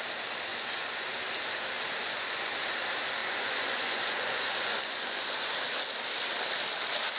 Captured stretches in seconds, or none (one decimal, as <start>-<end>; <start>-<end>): 0.0-0.5; 1.1-2.0; 2.5-3.2; 5.5-7.2